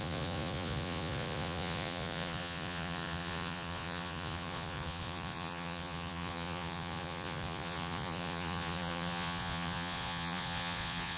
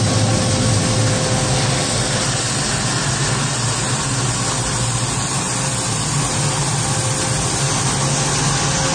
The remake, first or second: first